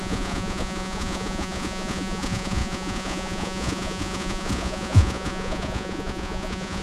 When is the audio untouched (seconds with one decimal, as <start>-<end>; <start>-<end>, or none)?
none